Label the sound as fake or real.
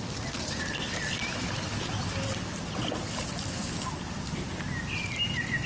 real